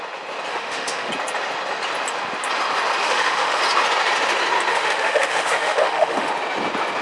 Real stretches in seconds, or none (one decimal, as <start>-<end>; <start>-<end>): 0.0-0.5; 1.1-3.0; 3.6-4.7; 6.3-7.0